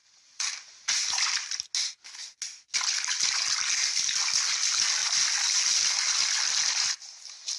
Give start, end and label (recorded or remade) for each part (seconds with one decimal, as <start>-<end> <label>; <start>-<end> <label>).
0.0-1.2 remade; 1.2-7.6 recorded